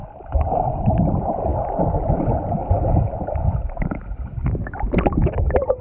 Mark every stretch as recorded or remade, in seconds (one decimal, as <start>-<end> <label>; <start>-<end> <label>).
0.0-5.8 remade